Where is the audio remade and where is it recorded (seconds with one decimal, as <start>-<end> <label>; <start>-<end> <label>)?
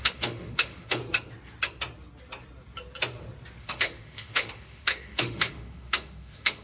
0.0-1.0 remade; 1.0-3.6 recorded; 3.6-6.6 remade